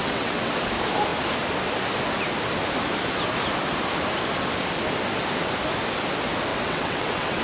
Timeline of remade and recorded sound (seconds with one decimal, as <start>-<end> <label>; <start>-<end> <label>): 0.0-0.5 remade; 0.5-6.5 recorded; 6.5-7.4 remade